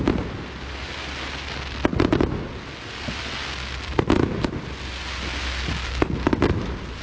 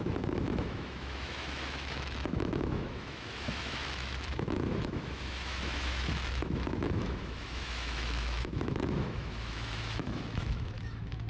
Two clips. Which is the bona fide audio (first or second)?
first